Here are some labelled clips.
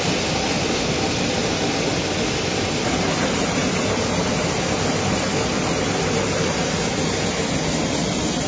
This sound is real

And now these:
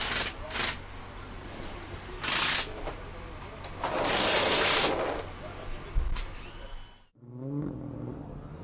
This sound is real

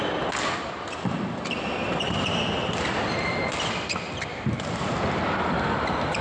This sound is real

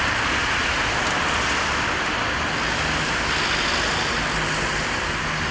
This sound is real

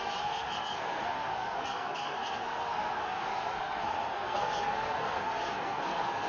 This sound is fake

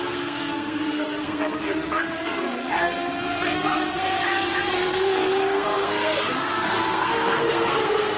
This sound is fake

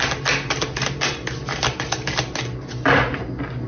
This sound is real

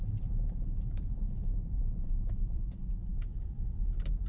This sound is fake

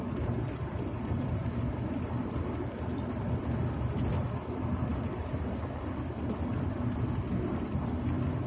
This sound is fake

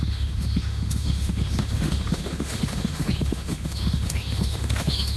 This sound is fake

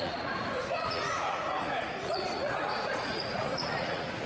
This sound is fake